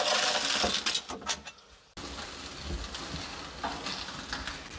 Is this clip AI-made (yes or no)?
no